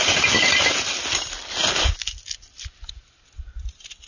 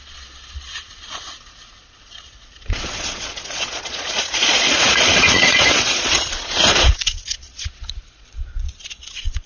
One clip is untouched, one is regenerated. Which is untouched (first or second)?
first